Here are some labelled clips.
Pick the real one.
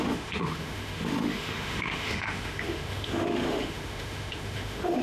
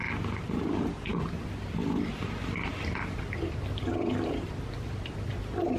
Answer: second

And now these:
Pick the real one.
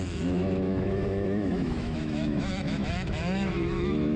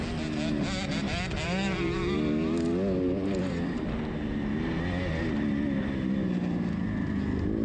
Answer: second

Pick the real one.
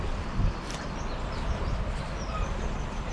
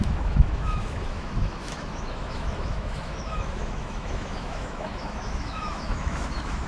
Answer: first